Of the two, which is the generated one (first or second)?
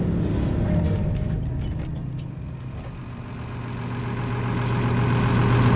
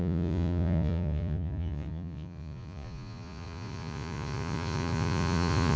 second